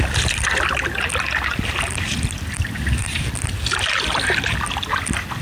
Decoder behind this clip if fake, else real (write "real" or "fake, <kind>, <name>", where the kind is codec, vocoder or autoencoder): real